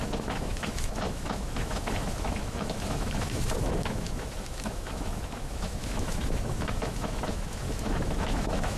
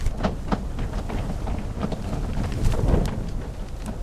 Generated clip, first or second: first